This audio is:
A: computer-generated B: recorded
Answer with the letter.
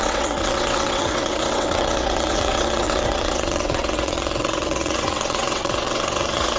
A